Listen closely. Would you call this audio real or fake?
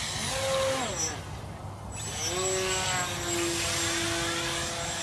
real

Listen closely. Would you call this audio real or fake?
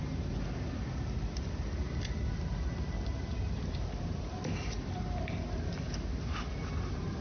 real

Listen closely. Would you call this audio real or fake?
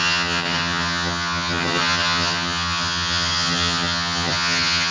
fake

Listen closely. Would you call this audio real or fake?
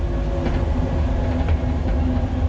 real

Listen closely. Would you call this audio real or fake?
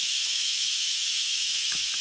fake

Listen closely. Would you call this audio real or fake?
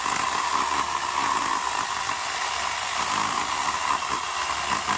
real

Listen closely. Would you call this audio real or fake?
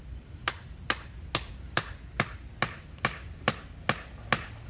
real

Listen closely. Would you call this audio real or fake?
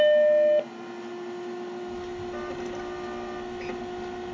real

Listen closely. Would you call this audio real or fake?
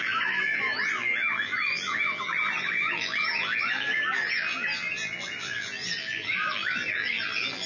fake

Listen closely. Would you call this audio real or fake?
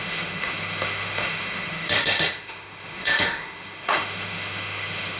fake